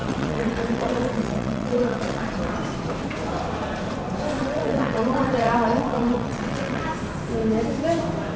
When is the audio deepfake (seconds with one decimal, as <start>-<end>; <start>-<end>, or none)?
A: 0.0-2.5; 4.4-6.8

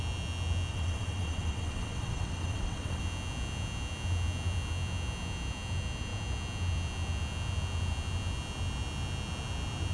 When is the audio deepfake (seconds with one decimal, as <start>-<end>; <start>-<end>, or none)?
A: 0.7-3.0